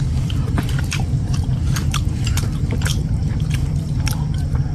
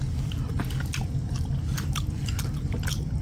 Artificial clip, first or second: first